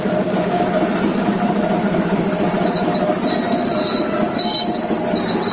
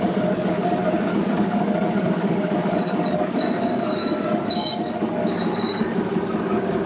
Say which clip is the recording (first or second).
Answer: first